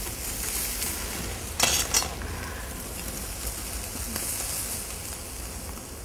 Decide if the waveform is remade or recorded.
recorded